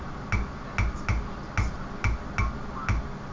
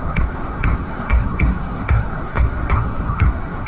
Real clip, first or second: first